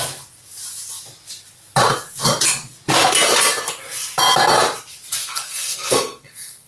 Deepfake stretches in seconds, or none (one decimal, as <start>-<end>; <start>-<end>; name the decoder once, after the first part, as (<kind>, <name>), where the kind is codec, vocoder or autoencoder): 5.2-6.7 (codec, SNAC)